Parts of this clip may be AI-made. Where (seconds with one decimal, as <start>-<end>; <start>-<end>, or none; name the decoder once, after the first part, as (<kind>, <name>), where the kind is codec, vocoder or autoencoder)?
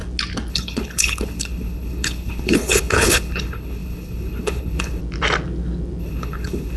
0.5-5.0 (codec, HILCodec); 6.0-6.8